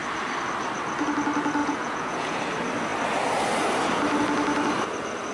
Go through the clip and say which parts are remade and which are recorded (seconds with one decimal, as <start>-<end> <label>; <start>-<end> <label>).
0.0-1.6 recorded; 1.6-2.4 remade; 2.4-5.3 recorded